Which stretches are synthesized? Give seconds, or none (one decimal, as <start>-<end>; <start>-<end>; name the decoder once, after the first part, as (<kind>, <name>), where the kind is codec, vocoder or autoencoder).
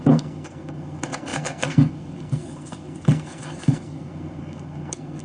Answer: 0.0-5.2 (codec, SNAC)